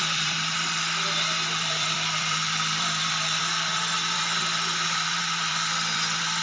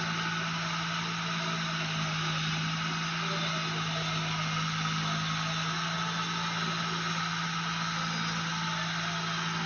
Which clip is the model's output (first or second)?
first